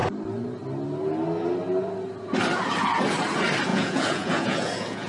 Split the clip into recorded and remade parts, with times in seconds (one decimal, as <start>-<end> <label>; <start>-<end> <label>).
0.0-3.7 recorded; 3.7-5.1 remade